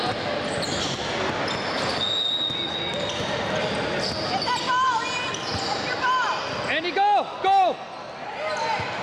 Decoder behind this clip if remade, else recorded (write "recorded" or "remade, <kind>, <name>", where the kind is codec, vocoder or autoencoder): recorded